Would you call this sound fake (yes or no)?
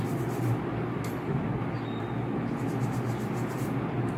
no